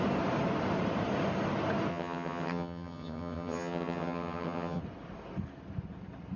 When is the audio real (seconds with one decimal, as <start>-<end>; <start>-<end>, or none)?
0.0-1.9; 4.8-6.4